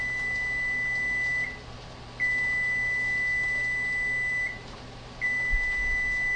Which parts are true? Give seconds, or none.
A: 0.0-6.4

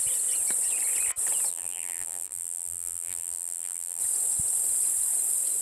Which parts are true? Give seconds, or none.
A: 0.0-1.5; 4.0-5.6

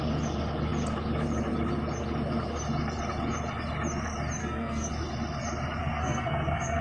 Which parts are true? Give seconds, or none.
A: 0.0-4.4; 4.9-5.8